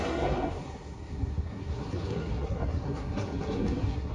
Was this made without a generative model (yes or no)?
no